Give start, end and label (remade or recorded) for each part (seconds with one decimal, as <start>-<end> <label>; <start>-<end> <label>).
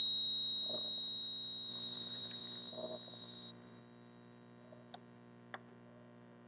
0.0-1.7 recorded; 1.7-2.7 remade; 2.7-3.1 recorded; 3.1-3.8 remade; 3.8-6.5 recorded